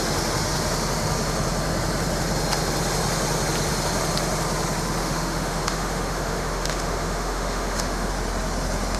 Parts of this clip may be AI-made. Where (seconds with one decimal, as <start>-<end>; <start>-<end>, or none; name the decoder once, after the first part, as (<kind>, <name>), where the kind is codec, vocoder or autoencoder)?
5.0-8.1 (autoencoder, DAC-VAE)